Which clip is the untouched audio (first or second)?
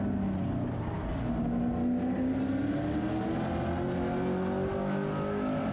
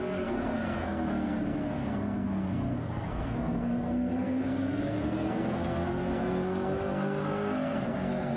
first